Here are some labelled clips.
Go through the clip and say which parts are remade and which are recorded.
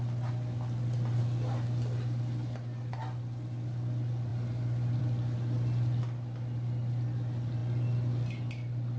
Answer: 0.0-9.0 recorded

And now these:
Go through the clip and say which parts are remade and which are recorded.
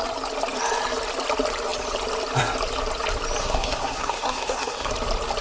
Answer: 0.0-3.4 recorded; 3.4-4.9 remade; 4.9-5.4 recorded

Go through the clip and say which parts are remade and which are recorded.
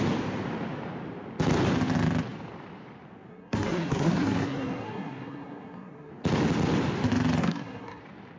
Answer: 0.0-3.3 recorded; 3.3-6.1 remade; 6.1-7.4 recorded; 7.4-8.0 remade; 8.0-8.4 recorded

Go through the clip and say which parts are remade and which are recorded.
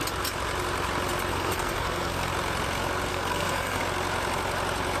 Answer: 0.0-1.3 recorded; 1.3-2.3 remade; 2.3-3.1 recorded; 3.1-3.8 remade; 3.8-5.0 recorded